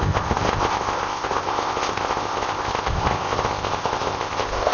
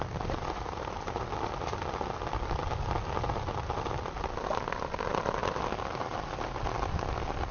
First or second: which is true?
second